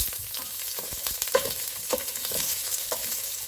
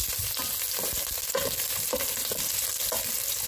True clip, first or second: second